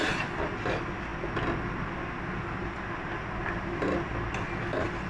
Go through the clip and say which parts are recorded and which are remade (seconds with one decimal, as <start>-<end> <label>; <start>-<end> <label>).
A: 0.0-5.1 recorded